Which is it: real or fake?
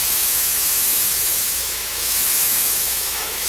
fake